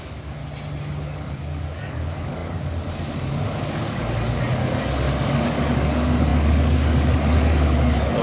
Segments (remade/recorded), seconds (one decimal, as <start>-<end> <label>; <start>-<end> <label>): 0.0-0.4 remade; 0.4-0.9 recorded; 0.9-8.2 remade